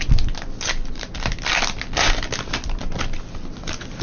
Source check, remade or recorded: recorded